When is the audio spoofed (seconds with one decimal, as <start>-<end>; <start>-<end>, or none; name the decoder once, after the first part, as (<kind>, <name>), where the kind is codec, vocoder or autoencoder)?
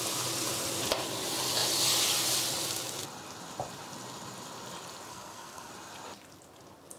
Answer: 5.1-5.7 (codec, SNAC)